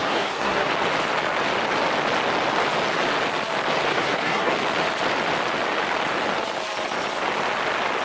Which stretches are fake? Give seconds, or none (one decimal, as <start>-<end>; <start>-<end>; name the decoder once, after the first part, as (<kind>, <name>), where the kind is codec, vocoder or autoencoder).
0.0-0.7 (codec, SNAC); 3.9-4.5